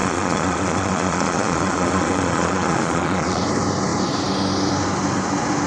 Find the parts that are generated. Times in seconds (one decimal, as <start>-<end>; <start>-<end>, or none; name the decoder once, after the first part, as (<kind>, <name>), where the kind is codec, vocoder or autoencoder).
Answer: 0.0-3.4 (vocoder, Vocos)